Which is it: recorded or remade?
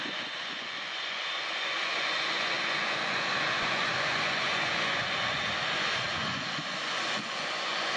remade